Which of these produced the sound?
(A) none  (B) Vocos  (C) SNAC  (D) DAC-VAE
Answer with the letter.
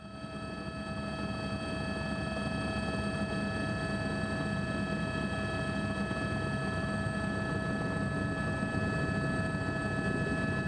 A